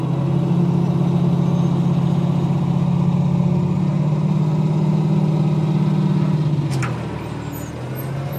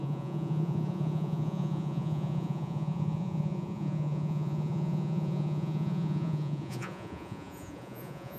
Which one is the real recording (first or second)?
first